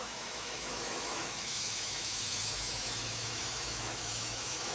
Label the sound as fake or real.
fake